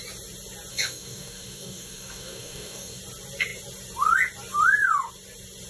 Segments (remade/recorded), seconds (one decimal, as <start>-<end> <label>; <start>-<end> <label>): 0.0-0.7 recorded; 0.7-3.0 remade; 3.0-5.7 recorded